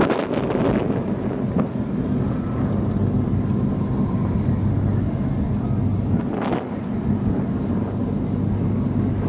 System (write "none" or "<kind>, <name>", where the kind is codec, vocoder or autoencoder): none